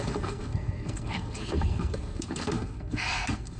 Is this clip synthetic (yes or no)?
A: yes